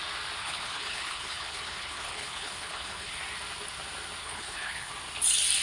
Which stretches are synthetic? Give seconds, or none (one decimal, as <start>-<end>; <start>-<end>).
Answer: 0.4-3.2; 4.2-4.9